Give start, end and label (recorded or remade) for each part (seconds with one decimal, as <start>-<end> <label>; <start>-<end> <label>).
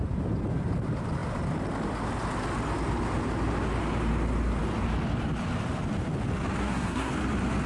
0.0-6.6 recorded; 6.6-7.1 remade; 7.1-7.7 recorded